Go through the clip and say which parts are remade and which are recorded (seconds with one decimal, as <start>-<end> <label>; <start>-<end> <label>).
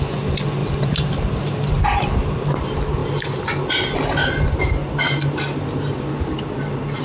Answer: 0.0-0.6 recorded; 0.6-1.2 remade; 1.2-7.0 recorded